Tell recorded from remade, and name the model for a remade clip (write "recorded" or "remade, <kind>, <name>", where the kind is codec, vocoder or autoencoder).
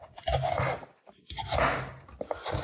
recorded